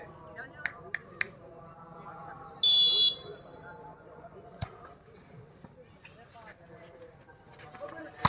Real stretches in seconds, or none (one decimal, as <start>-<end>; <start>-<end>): 0.0-3.9; 4.8-8.3